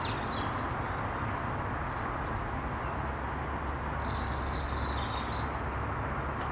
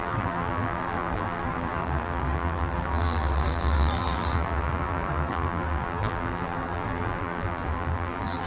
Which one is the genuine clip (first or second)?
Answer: first